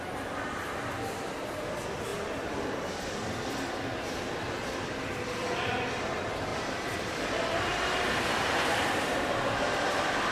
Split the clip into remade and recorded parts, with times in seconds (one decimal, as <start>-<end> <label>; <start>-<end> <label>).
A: 0.0-2.1 recorded; 2.1-4.4 remade; 4.4-6.5 recorded; 6.5-9.6 remade; 9.6-10.3 recorded